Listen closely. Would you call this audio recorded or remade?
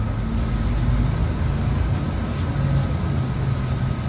recorded